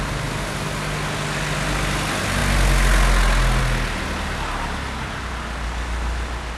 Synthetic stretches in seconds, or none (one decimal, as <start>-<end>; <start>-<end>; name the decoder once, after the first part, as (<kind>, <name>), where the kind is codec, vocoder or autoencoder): none